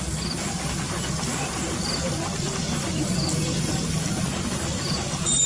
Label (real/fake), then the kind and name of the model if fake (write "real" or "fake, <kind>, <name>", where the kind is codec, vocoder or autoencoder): real